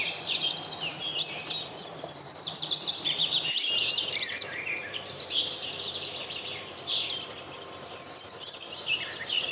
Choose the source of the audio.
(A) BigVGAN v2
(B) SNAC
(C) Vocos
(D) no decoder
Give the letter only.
A